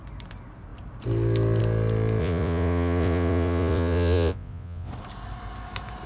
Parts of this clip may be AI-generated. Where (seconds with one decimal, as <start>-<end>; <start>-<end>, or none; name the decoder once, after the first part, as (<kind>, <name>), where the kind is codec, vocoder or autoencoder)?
2.2-4.9 (vocoder, Vocos)